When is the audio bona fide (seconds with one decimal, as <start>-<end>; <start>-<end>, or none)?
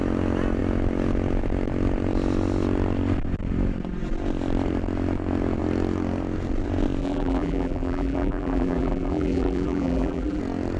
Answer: 0.0-7.0; 10.4-10.8